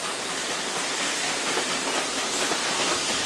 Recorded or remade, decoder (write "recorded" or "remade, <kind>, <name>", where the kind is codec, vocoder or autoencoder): recorded